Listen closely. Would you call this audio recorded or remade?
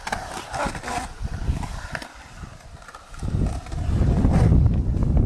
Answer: recorded